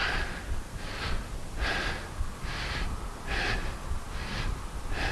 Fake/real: real